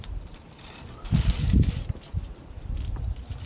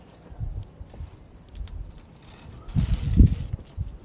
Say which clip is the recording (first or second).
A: second